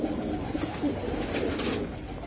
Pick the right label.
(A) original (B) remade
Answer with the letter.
A